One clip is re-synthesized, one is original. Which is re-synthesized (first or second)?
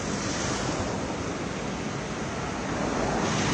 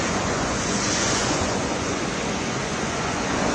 second